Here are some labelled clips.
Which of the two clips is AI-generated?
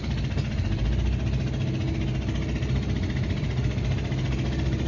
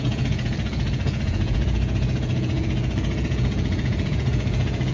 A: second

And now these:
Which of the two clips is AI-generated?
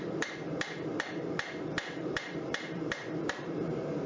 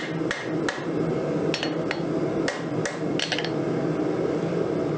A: first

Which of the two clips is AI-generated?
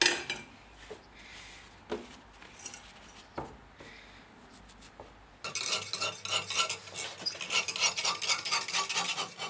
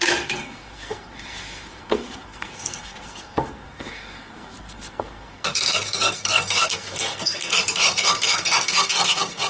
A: second